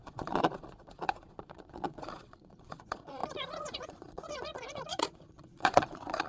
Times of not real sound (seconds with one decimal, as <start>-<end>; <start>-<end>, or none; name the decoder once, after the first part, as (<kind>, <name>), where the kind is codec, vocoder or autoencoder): 0.0-6.3 (vocoder, Vocos)